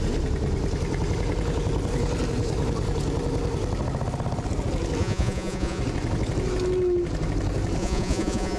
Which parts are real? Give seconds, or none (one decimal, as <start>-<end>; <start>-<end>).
0.0-5.0; 5.8-7.8

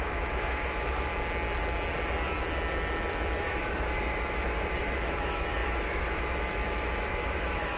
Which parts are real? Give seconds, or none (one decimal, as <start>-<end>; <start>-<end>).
1.1-3.4

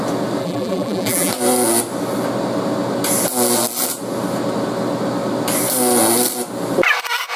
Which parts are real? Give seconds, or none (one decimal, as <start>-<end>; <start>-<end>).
0.0-0.4; 1.3-7.4

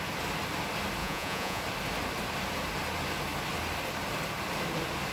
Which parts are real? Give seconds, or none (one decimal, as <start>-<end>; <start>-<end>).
0.0-1.0; 1.6-5.1

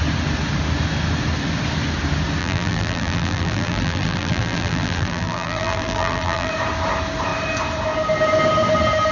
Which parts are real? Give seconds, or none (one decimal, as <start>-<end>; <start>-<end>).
0.0-2.4; 6.5-9.1

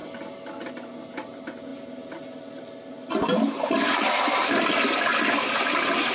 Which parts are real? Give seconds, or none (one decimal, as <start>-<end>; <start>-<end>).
0.0-6.1